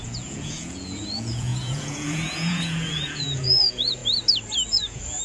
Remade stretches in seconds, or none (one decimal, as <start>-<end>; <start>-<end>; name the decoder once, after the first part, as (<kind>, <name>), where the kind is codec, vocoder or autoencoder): 0.0-4.0 (vocoder, Vocos); 4.7-5.2